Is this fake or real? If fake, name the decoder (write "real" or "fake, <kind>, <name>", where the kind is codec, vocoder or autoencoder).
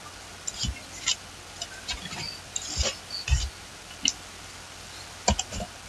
real